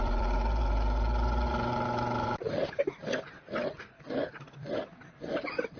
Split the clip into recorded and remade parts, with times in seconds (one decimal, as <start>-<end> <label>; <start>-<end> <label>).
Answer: 0.0-5.8 recorded